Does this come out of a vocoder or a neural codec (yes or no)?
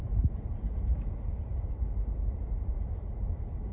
yes